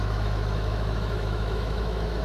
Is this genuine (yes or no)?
no